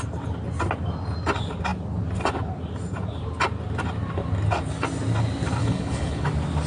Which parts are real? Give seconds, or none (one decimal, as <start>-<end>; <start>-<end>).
0.0-5.6; 6.3-6.7